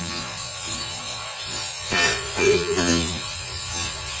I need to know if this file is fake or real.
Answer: fake